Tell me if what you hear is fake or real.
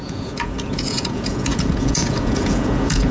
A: fake